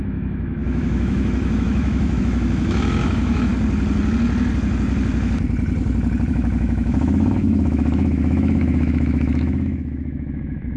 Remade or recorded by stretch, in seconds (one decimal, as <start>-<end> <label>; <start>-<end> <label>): 0.0-3.5 remade; 3.5-6.3 recorded; 6.3-10.8 remade